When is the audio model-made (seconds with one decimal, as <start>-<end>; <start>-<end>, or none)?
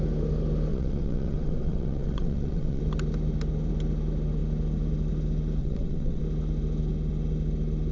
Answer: 0.7-2.8; 5.6-6.2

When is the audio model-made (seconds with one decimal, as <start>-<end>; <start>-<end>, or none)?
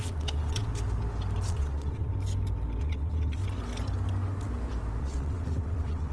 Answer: 0.0-0.7; 1.5-2.1; 2.8-3.4; 5.0-6.1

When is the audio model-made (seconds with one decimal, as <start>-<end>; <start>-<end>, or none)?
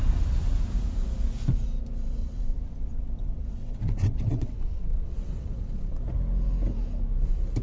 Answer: 2.2-6.0